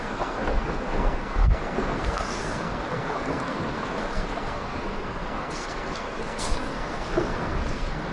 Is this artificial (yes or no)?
yes